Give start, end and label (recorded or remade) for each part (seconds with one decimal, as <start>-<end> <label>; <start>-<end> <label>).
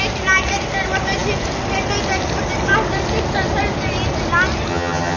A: 0.0-4.7 recorded; 4.7-5.2 remade